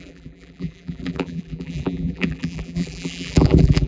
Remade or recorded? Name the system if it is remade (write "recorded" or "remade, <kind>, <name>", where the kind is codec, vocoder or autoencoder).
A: remade, vocoder, BigVGAN v2